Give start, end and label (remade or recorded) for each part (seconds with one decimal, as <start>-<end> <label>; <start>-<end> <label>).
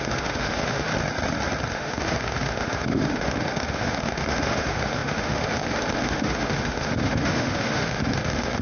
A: 0.0-0.9 remade; 0.9-1.7 recorded; 1.7-8.6 remade